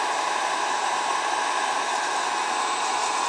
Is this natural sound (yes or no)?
no